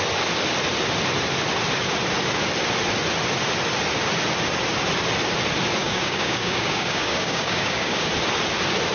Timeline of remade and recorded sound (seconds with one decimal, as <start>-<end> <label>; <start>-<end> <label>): 0.0-5.8 recorded; 5.8-8.1 remade; 8.1-8.9 recorded